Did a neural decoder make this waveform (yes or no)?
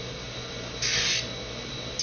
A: no